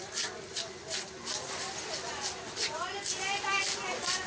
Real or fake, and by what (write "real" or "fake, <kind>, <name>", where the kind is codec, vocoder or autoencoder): real